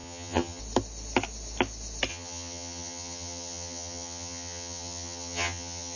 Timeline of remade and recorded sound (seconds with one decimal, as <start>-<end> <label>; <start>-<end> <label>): 0.0-0.6 remade; 0.6-2.1 recorded; 2.1-6.0 remade